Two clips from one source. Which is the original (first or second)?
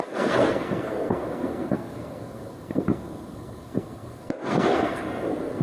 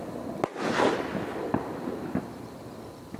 second